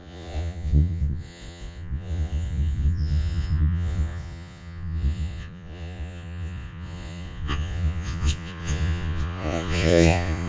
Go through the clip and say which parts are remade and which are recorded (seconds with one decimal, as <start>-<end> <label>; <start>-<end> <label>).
0.0-10.5 remade

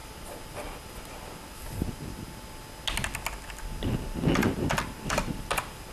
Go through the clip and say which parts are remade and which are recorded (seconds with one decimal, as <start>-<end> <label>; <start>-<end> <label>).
0.0-5.9 recorded